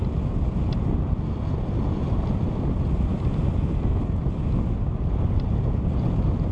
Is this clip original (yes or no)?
yes